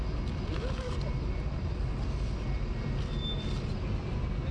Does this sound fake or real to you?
real